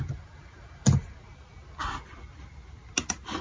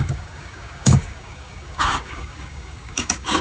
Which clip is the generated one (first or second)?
second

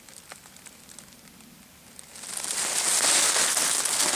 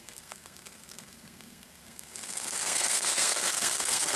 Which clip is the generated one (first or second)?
second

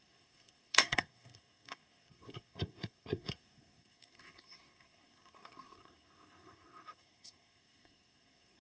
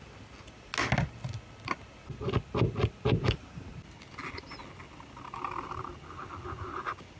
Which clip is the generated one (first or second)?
first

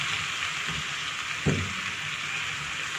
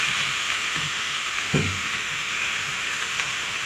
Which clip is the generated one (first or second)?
second